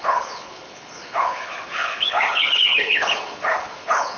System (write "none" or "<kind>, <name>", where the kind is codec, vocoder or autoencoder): codec, HILCodec